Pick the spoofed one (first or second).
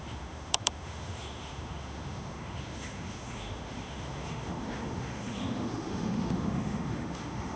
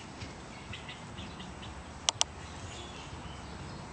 first